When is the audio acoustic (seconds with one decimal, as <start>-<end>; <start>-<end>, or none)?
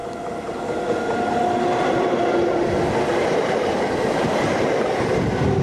0.0-5.6